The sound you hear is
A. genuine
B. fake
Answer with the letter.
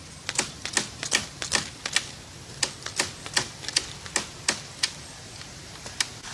A